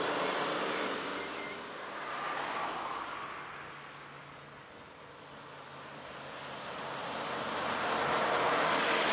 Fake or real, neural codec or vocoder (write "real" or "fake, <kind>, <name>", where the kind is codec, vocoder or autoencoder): real